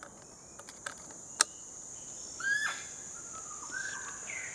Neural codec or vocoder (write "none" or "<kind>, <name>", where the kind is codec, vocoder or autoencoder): none